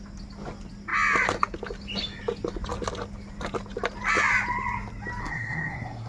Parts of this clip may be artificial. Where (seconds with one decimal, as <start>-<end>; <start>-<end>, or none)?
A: 5.2-6.1